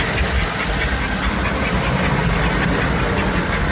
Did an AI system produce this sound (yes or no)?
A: no